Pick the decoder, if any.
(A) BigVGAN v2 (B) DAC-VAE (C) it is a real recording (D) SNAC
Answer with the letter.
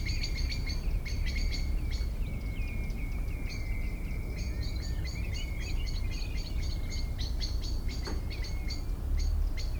C